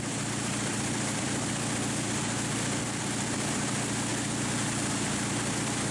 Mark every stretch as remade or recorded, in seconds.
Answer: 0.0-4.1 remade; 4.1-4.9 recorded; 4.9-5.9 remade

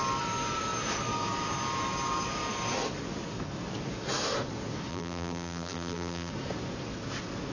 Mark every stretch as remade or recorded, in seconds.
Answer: 0.0-4.9 recorded; 4.9-6.3 remade; 6.3-7.5 recorded

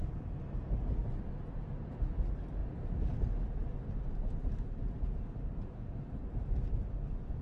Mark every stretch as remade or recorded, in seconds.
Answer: 0.0-1.0 recorded; 1.0-1.9 remade; 1.9-2.6 recorded; 2.6-6.4 remade; 6.4-7.4 recorded

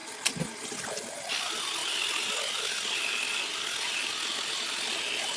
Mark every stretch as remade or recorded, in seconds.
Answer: 0.0-5.4 recorded

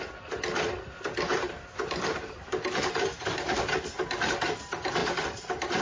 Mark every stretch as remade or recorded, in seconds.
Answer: 0.0-1.3 recorded; 1.3-3.7 remade; 3.7-5.0 recorded; 5.0-5.8 remade

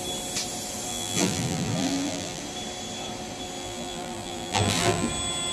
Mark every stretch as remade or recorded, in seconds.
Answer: 0.0-0.9 recorded; 0.9-2.4 remade; 2.4-3.6 recorded; 3.6-5.1 remade; 5.1-5.5 recorded

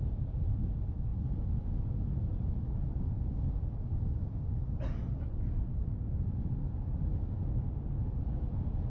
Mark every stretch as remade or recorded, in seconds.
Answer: 0.0-8.9 recorded

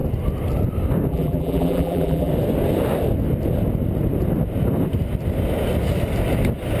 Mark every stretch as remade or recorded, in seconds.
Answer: 0.0-1.1 recorded; 1.1-2.3 remade; 2.3-6.8 recorded